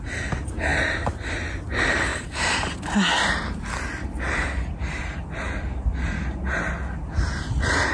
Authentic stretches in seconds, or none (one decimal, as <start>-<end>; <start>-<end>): 0.0-2.1; 2.8-7.9